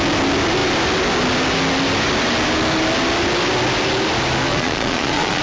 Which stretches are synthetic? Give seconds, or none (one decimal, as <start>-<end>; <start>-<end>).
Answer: 4.5-5.4

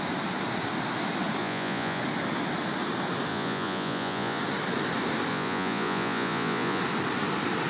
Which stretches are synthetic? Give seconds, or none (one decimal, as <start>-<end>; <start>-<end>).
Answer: 1.4-2.0; 3.3-4.4; 5.3-6.8